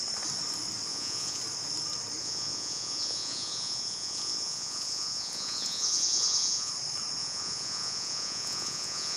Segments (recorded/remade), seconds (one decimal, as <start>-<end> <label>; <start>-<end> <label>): 0.0-0.9 recorded; 0.9-1.4 remade; 1.4-2.2 recorded; 2.2-6.7 remade; 6.7-7.2 recorded; 7.2-9.2 remade